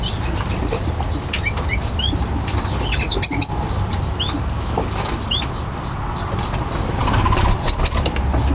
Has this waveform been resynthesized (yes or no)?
no